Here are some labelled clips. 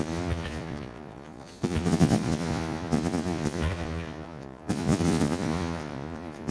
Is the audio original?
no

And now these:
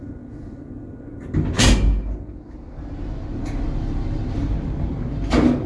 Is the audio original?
yes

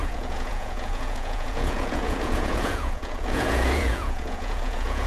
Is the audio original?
no